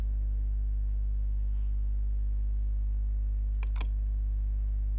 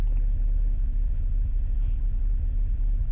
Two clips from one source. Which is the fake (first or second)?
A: second